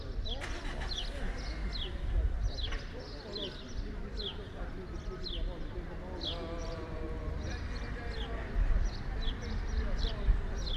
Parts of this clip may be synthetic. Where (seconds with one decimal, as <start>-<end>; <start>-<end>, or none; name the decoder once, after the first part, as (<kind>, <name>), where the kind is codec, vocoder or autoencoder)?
6.6-7.5 (vocoder, BigVGAN v2)

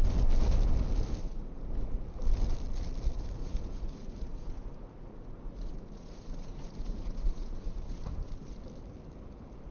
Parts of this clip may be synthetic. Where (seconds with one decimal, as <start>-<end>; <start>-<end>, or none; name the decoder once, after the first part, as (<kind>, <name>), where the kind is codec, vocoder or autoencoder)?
1.2-1.7 (vocoder, Vocos); 3.4-8.6